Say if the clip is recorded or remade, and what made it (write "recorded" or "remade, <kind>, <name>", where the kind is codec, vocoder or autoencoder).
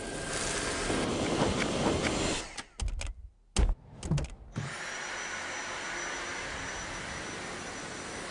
recorded